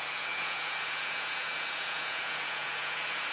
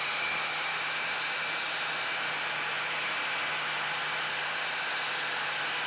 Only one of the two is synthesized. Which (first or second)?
first